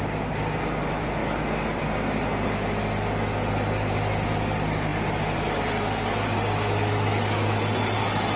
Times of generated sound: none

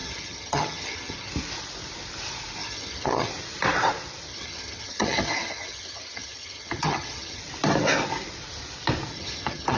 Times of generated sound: 0.0-1.3 (vocoder, HiFi-GAN); 2.6-3.3; 4.3-7.4; 9.1-9.8

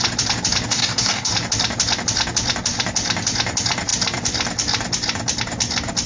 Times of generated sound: 0.7-1.3 (codec, DAC)

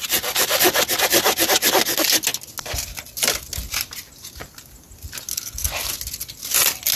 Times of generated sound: none

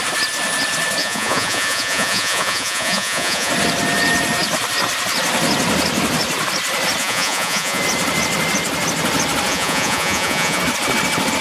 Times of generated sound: 1.0-3.5 (vocoder, Vocos); 7.0-7.8; 9.5-10.6

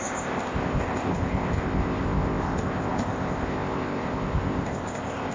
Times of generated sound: 0.0-5.3 (codec, ZipCodec)

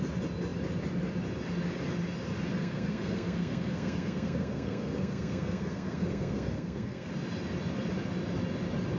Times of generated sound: 2.5-7.1 (codec, SNAC)